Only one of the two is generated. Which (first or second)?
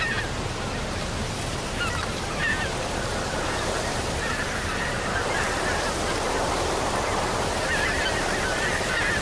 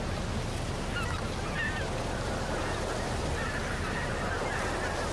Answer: first